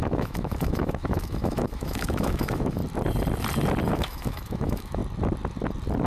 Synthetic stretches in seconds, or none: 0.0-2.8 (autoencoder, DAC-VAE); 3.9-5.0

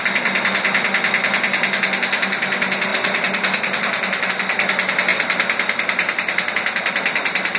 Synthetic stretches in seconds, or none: none

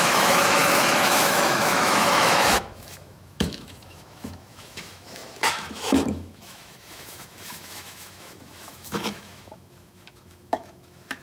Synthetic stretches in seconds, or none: 0.0-11.2 (autoencoder, DAC-VAE)

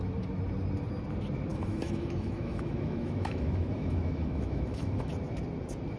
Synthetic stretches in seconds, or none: 1.5-5.1 (autoencoder, DAC-VAE)

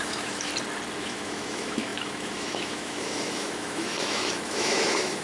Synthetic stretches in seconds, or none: 0.0-0.5 (autoencoder, DAC-VAE); 1.0-5.2

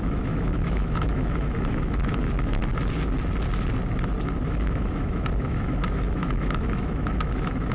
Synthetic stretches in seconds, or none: 0.0-2.6 (autoencoder, DAC-VAE); 4.5-7.7